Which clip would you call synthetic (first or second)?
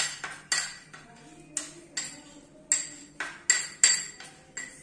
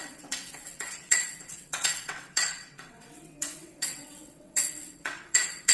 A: second